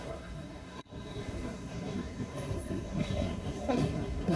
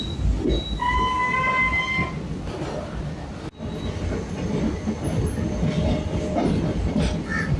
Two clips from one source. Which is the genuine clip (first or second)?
second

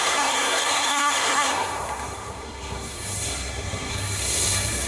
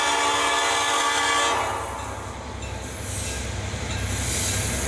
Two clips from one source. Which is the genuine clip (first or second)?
second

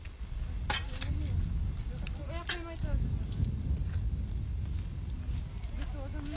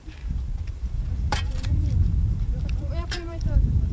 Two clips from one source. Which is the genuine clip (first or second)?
first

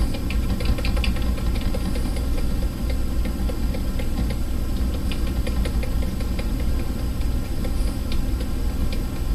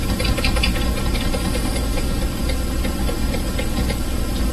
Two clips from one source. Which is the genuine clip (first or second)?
first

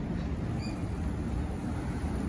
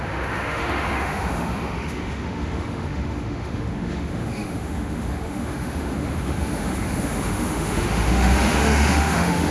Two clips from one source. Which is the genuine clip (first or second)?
first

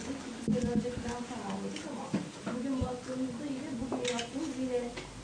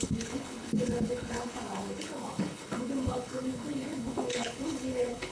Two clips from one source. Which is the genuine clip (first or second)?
first